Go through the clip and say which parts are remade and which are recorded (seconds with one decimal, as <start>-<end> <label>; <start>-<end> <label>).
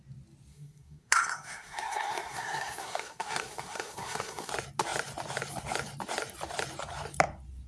0.0-0.5 recorded; 0.5-4.5 remade; 4.5-7.7 recorded